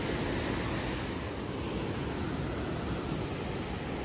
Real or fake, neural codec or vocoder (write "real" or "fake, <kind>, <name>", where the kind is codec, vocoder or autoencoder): real